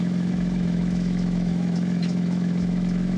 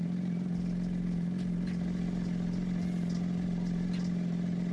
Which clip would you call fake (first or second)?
first